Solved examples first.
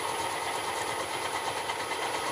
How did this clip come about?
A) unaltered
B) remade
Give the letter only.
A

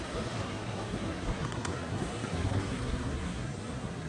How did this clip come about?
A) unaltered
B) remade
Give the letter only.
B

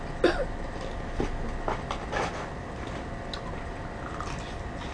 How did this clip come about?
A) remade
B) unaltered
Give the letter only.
B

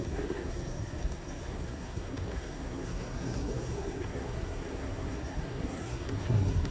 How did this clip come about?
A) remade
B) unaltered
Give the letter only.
A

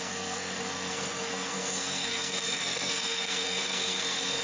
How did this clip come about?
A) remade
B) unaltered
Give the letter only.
A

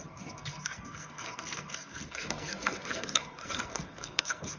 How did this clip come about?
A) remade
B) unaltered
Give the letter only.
A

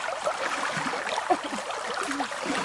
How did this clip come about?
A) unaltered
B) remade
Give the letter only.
A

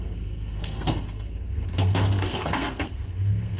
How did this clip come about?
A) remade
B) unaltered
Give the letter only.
A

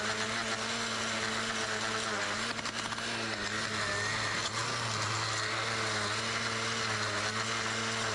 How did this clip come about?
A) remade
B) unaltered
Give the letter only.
B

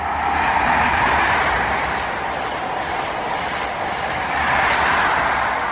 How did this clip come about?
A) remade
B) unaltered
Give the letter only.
B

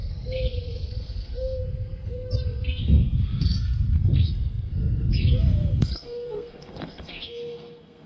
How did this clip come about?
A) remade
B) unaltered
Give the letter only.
A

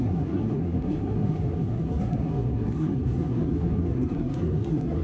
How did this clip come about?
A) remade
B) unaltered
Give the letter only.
A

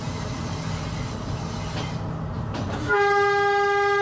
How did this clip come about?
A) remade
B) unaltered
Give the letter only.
B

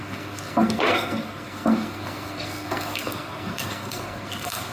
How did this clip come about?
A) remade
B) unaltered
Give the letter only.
A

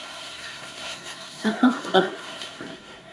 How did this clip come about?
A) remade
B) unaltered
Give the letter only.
A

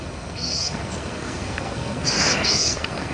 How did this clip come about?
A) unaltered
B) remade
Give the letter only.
B